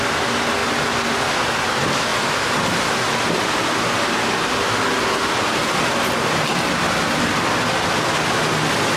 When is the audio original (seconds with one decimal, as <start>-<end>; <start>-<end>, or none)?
0.0-9.0